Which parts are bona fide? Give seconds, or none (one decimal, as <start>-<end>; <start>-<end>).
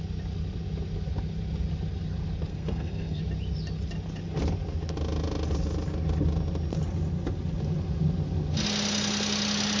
0.0-2.5; 3.2-9.8